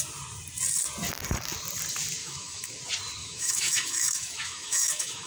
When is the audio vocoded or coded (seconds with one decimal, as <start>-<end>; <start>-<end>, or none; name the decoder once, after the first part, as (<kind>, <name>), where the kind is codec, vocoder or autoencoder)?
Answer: 2.2-2.8 (autoencoder, DAC-VAE); 3.2-5.3